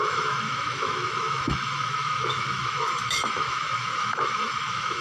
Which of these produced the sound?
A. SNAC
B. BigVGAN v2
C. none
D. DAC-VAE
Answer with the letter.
D